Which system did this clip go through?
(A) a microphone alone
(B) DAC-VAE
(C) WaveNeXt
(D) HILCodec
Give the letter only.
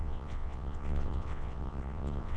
C